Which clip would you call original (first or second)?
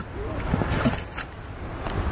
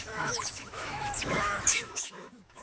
first